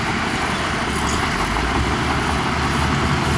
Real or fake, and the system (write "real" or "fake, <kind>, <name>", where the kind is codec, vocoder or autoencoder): real